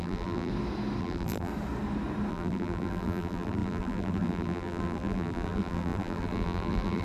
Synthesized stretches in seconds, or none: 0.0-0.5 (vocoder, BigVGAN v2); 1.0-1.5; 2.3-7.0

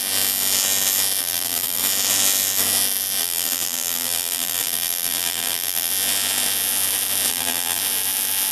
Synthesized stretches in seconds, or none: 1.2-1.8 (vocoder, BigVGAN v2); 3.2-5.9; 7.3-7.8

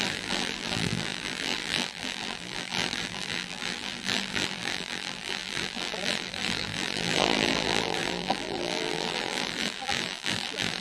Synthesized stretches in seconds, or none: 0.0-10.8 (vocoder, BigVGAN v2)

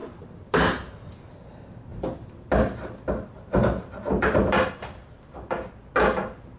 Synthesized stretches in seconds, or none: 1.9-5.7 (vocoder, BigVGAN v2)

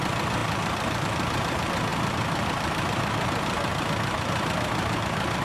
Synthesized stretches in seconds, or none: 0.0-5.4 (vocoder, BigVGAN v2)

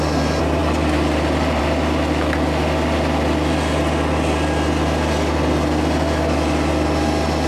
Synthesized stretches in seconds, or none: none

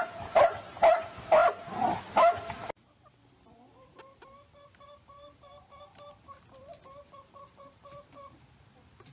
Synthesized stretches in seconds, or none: 0.0-9.1 (vocoder, BigVGAN v2)